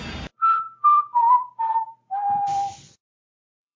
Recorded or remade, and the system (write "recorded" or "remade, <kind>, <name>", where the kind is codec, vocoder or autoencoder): remade, vocoder, BigVGAN v2